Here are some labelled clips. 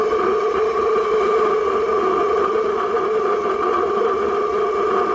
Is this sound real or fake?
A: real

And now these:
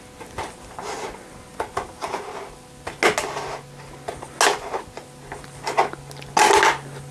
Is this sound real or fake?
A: real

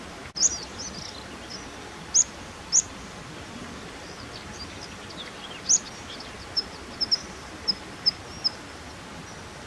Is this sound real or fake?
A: real